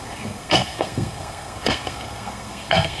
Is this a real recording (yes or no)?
no